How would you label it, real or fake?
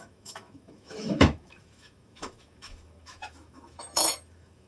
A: fake